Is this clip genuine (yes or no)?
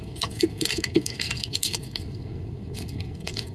no